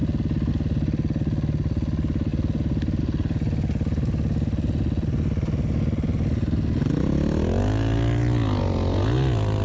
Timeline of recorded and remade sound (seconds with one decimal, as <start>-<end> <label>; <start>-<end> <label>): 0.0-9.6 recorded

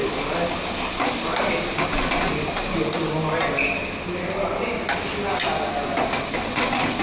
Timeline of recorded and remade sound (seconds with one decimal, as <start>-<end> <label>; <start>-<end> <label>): 0.0-7.0 recorded

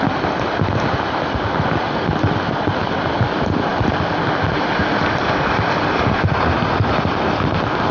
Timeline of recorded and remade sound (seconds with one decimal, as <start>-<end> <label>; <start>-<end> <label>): 0.0-7.9 recorded

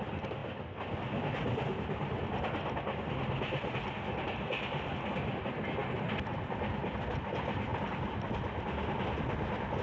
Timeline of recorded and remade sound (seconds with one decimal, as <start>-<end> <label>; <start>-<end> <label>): 0.0-9.8 recorded

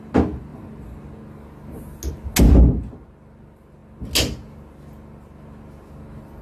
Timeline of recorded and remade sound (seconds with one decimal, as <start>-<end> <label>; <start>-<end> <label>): 0.0-6.4 recorded

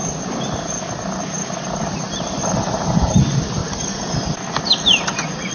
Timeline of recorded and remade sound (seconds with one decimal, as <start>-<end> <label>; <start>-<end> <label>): 0.0-1.2 recorded; 1.2-3.6 remade; 3.6-5.5 recorded

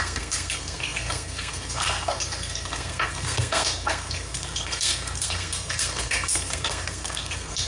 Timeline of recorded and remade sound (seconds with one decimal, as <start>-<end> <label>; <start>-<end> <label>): 0.0-7.7 remade

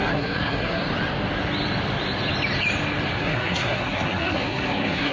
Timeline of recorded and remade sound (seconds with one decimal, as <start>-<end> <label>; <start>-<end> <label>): 0.0-0.8 remade; 0.8-3.2 recorded; 3.2-5.1 remade